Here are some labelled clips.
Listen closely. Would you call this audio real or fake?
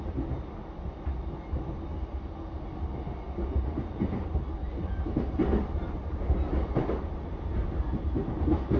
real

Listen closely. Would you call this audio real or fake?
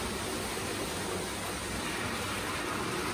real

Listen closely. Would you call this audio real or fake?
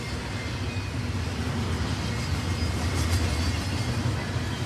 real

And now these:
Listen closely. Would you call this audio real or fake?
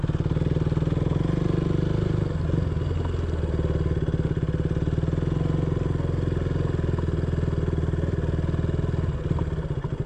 real